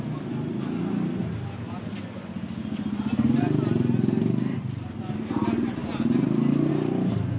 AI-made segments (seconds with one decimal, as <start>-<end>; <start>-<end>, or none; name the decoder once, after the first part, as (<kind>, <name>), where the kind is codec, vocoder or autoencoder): none